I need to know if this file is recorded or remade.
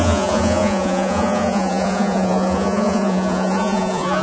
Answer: remade